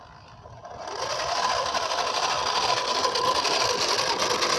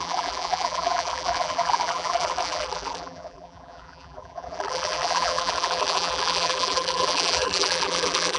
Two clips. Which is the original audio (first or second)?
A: first